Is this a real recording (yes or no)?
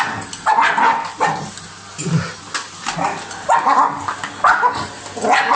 yes